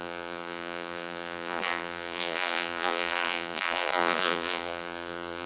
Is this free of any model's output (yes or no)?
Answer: no